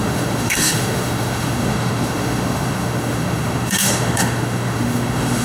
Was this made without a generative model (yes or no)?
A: no